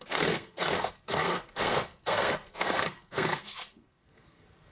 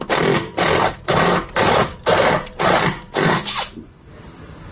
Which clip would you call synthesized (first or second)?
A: first